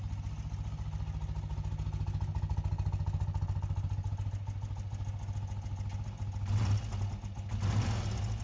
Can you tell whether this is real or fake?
real